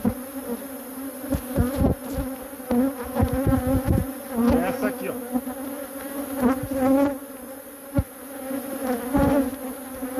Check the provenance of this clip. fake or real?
real